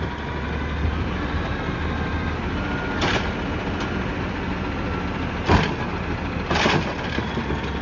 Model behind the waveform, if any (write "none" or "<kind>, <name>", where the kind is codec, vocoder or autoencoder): none